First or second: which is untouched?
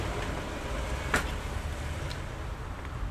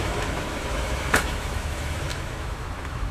first